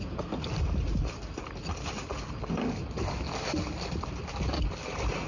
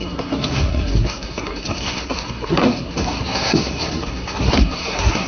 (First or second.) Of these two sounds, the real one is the first